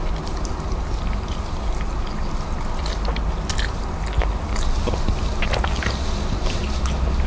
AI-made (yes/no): no